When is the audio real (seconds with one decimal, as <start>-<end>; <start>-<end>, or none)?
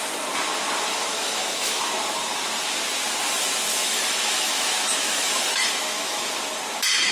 0.0-1.1; 1.8-3.8; 6.3-7.1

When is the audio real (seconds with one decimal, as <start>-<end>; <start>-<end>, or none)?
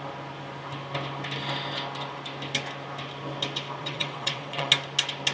0.0-3.8; 4.7-5.3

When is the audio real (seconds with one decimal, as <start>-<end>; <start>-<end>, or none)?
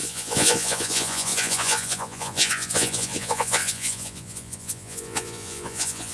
none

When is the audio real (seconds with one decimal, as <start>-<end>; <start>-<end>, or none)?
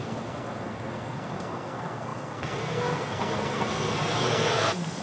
none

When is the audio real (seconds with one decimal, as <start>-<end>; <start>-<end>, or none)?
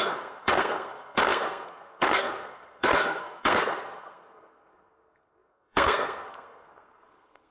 none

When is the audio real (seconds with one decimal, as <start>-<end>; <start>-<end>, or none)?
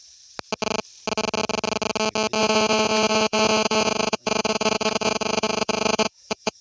0.0-2.4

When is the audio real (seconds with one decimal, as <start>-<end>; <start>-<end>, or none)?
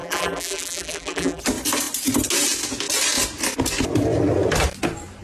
1.4-5.2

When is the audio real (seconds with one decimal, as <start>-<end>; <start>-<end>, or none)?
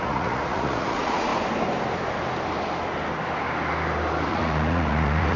1.3-4.3